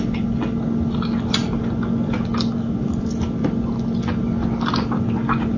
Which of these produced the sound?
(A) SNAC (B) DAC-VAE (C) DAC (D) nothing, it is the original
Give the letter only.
D